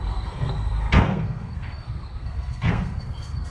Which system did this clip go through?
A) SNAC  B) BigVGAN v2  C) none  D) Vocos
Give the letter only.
A